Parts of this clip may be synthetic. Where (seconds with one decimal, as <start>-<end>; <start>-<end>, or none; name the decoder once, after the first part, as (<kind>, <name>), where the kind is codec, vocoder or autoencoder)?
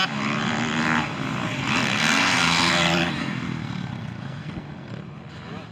1.9-2.7 (codec, SNAC); 3.2-4.9